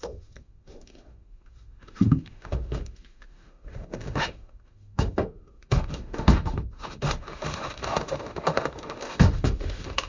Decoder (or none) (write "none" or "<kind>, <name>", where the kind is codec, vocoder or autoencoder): autoencoder, DAC-VAE